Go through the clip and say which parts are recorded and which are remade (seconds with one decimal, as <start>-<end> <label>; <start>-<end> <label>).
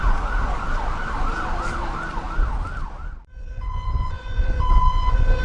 0.0-3.4 recorded; 3.4-5.4 remade